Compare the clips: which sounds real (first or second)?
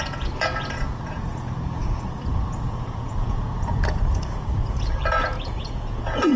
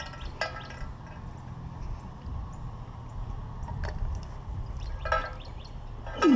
second